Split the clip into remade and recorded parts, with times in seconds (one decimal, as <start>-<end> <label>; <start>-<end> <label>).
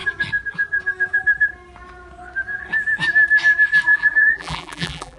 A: 0.0-3.9 recorded; 3.9-5.2 remade